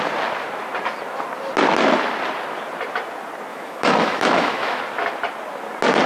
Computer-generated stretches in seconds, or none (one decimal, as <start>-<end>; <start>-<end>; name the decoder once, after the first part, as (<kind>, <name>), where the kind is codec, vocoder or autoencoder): 3.5-4.8 (autoencoder, DAC-VAE)